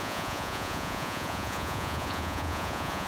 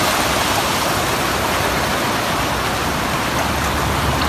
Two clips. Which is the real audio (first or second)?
second